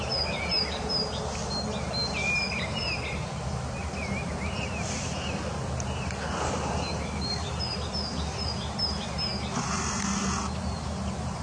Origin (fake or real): real